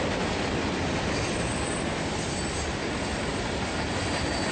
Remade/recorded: recorded